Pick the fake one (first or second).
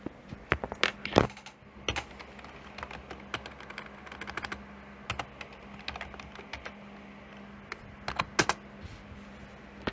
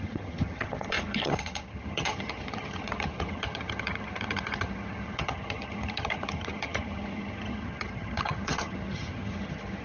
second